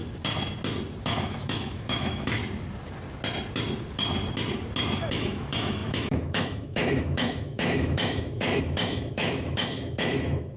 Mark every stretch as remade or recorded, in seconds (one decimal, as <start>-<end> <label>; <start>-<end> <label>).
0.0-1.0 recorded; 1.0-2.4 remade; 2.4-5.0 recorded; 5.0-10.6 remade